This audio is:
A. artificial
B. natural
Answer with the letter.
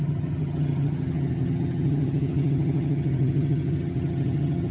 A